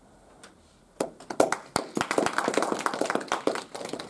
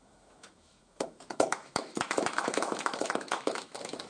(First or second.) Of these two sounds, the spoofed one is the second